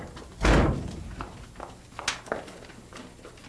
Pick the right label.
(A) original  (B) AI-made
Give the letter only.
A